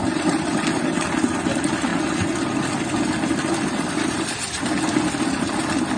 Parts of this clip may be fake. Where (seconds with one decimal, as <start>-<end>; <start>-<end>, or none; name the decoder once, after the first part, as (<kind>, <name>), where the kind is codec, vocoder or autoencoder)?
none